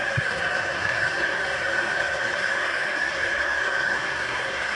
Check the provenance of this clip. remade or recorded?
remade